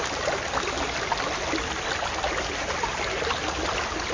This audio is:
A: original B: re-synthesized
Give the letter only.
A